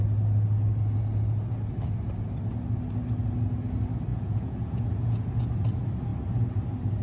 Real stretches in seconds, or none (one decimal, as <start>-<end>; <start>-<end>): 0.0-4.1; 5.3-7.0